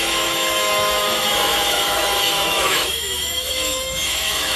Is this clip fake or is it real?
fake